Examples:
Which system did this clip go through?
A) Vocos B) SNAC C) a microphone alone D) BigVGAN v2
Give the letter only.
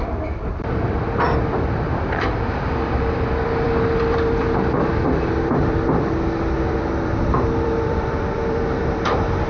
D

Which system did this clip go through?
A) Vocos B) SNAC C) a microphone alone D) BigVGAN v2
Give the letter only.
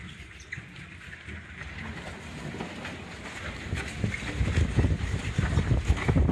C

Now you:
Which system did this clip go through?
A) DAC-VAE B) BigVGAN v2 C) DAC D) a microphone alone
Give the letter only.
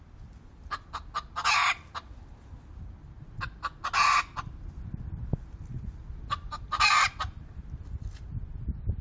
D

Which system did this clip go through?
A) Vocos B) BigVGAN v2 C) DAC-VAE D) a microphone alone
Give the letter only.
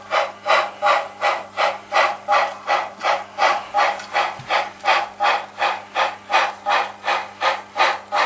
D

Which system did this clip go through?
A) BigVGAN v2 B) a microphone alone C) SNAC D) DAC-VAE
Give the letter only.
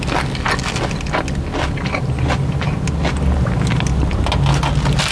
B